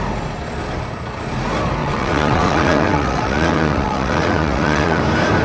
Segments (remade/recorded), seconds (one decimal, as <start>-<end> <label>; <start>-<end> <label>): 0.0-1.8 recorded; 1.8-5.0 remade; 5.0-5.4 recorded